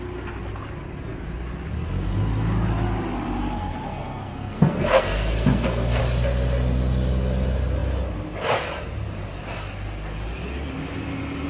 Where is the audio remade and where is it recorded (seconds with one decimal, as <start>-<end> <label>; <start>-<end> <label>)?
0.0-3.6 recorded; 3.6-6.0 remade; 6.0-11.5 recorded